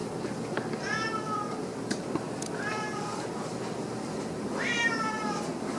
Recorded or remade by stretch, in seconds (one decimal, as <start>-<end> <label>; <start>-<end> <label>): 0.0-0.6 remade; 0.6-1.6 recorded; 1.6-5.1 remade; 5.1-5.8 recorded